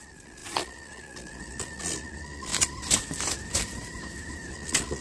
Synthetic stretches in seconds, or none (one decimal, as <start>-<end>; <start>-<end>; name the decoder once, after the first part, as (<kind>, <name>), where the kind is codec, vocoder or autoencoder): 0.0-2.5 (vocoder, Vocos); 4.5-5.0